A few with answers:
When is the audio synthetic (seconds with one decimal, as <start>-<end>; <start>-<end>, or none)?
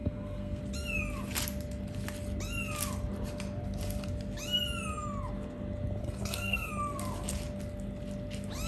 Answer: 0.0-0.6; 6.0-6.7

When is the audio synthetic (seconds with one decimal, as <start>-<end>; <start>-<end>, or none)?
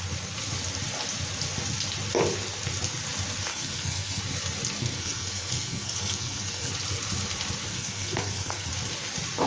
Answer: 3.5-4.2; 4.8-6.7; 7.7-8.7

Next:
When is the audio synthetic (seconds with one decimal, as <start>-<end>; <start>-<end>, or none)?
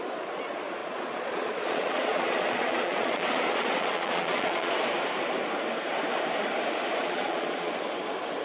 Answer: 0.8-4.7; 7.0-7.7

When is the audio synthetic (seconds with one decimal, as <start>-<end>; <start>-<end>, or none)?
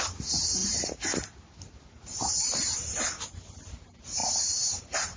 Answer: none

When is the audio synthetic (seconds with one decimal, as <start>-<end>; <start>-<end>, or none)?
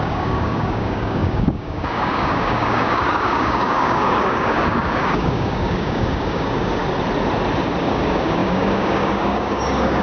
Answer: 0.0-6.8; 7.8-10.0